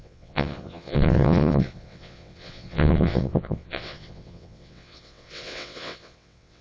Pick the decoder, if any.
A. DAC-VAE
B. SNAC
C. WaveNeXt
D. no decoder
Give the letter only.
C